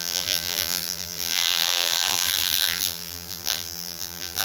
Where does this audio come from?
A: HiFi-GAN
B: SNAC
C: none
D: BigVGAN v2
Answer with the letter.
D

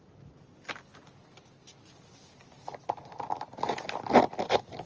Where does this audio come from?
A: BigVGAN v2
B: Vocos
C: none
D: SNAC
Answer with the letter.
C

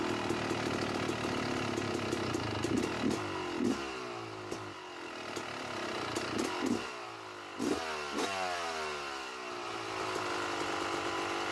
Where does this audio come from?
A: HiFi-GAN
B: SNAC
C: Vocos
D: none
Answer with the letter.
D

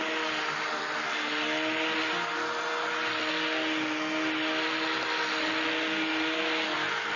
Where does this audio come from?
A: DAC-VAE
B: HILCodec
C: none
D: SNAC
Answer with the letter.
C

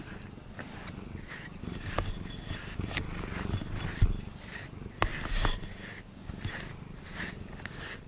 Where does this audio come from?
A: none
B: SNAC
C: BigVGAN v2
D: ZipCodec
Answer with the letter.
A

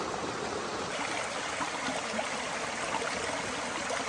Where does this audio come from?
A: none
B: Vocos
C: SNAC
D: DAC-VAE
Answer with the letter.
A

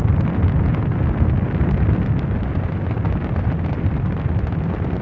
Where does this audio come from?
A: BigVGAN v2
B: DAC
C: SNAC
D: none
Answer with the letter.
D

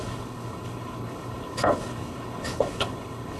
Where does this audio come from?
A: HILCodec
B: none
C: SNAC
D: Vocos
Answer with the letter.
A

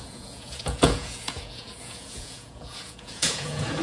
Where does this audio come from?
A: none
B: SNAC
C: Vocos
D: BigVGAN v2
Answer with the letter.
C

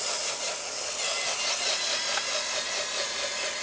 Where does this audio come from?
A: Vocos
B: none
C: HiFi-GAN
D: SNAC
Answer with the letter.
B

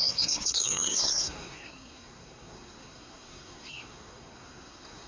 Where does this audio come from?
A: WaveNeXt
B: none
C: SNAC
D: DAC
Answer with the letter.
C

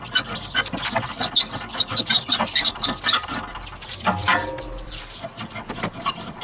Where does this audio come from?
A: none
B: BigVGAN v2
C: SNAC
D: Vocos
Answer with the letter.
A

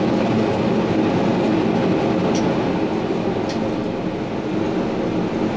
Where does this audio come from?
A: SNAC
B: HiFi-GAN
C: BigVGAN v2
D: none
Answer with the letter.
D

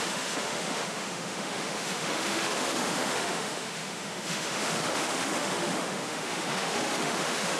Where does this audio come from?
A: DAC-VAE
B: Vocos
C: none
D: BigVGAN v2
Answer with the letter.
A